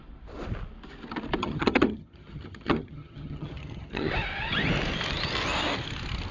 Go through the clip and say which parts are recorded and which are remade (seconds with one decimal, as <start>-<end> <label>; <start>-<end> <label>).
0.0-1.4 recorded; 1.4-4.1 remade; 4.1-6.3 recorded